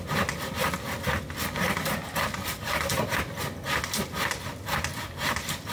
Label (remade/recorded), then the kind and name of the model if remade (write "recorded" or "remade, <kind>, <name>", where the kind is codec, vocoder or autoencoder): recorded